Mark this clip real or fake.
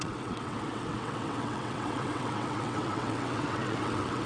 fake